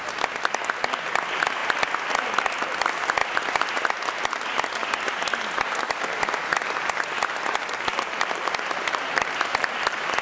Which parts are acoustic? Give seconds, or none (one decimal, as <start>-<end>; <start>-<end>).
0.0-7.9